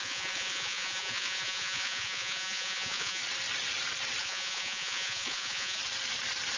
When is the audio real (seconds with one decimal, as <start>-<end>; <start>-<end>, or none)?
3.2-4.2; 5.8-6.6